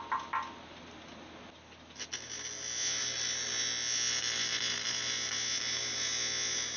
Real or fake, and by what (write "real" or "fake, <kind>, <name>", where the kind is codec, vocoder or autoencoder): real